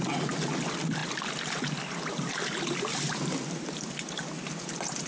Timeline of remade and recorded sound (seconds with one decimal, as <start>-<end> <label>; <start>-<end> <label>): 0.0-5.1 recorded